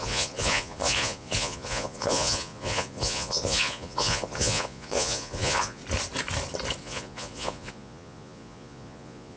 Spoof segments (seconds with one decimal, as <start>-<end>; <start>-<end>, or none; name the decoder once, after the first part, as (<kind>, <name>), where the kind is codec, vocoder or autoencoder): 0.0-5.8 (vocoder, Vocos); 6.8-9.4